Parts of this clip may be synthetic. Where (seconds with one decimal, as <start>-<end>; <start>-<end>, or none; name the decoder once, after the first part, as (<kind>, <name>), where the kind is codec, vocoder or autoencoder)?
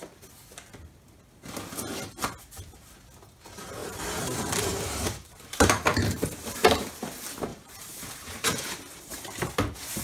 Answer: 3.8-6.9 (vocoder, BigVGAN v2); 7.5-9.5